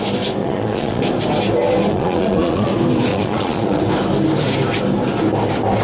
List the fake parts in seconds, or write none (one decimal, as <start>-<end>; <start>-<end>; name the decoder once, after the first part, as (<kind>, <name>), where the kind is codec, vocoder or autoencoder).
0.4-1.0 (vocoder, Vocos); 1.9-2.7; 3.1-3.8